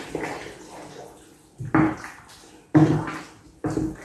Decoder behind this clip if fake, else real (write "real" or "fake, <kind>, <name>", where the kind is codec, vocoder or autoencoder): real